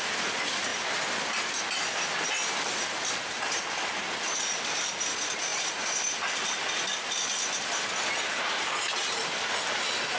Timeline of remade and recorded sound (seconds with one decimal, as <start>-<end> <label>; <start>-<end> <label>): 0.0-10.2 recorded